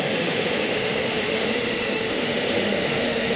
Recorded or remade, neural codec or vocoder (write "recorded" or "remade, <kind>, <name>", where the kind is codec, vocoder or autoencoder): remade, autoencoder, DAC-VAE